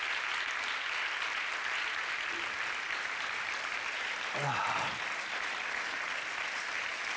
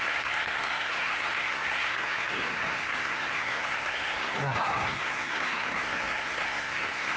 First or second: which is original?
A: first